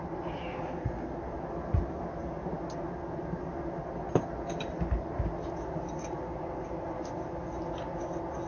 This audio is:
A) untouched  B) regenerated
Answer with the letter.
A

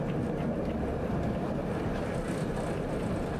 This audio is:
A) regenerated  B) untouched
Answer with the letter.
B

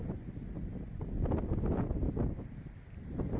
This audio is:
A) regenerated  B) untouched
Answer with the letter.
B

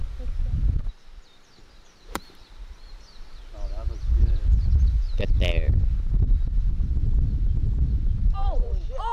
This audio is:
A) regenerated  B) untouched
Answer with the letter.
A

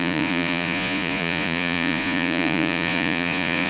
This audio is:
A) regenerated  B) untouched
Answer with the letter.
A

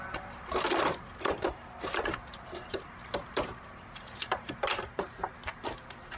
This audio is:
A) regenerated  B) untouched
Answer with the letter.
A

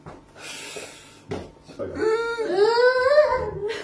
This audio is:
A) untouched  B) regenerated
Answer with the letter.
A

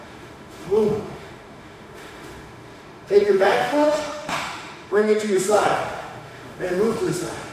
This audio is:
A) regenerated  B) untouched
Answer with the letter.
A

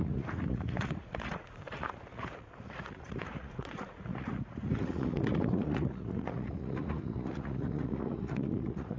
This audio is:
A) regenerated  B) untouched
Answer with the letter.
A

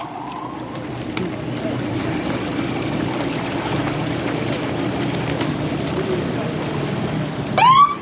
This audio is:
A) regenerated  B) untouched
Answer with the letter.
A